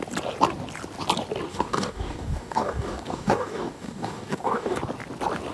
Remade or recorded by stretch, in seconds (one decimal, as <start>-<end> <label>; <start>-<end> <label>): 0.0-1.5 recorded; 1.5-4.8 remade; 4.8-5.5 recorded